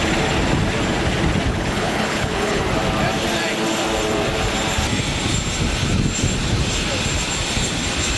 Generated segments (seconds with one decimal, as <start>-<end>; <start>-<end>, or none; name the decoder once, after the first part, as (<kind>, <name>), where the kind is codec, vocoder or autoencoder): 1.5-2.6 (codec, HILCodec)